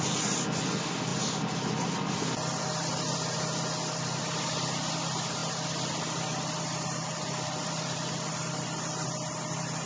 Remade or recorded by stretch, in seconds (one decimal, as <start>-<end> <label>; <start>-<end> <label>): 0.0-9.8 recorded